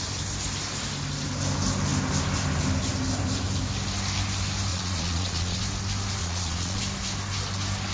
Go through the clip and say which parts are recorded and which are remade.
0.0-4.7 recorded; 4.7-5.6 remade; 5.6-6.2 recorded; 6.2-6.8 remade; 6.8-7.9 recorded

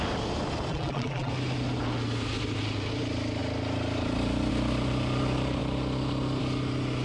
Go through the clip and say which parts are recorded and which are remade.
0.0-0.7 recorded; 0.7-1.3 remade; 1.3-7.0 recorded

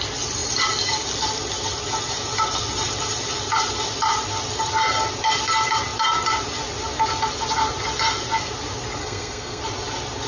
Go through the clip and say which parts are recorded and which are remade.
0.0-9.0 recorded; 9.0-9.6 remade; 9.6-10.3 recorded

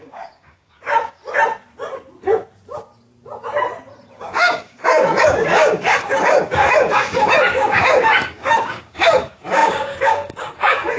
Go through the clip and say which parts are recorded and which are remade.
0.0-1.2 remade; 1.2-4.2 recorded; 4.2-11.0 remade

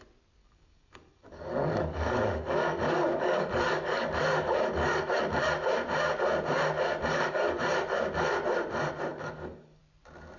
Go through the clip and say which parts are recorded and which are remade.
0.0-0.4 recorded; 0.4-5.2 remade; 5.2-7.1 recorded; 7.1-7.6 remade; 7.6-9.1 recorded; 9.1-9.8 remade; 9.8-10.4 recorded

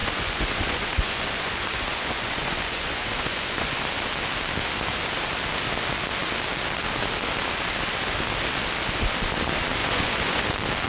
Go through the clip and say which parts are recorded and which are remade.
0.0-3.8 remade; 3.8-9.8 recorded; 9.8-10.4 remade; 10.4-10.9 recorded